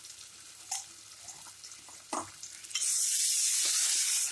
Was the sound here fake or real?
real